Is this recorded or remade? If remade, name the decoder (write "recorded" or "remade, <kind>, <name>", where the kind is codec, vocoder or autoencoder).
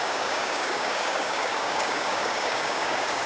remade, codec, DAC